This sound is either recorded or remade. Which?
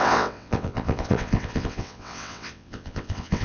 remade